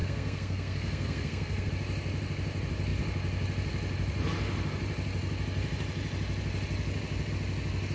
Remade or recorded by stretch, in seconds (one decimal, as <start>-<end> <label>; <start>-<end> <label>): 0.0-1.7 remade; 1.7-7.9 recorded